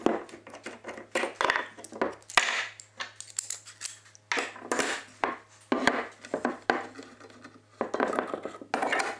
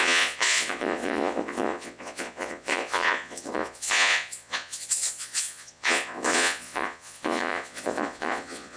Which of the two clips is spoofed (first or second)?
second